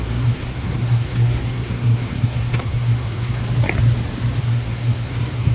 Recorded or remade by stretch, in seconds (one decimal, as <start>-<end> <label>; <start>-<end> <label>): 0.0-3.4 remade; 3.4-4.4 recorded; 4.4-5.5 remade